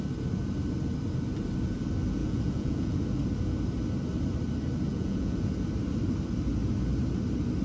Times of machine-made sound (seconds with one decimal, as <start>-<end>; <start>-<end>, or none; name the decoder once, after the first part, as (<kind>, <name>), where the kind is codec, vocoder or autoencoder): 2.2-3.0 (vocoder, Vocos); 4.9-5.5